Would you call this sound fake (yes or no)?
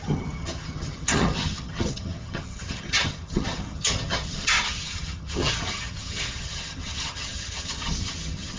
yes